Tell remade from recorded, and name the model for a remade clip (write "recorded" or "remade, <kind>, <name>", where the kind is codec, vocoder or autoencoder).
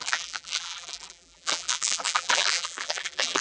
remade, vocoder, BigVGAN v2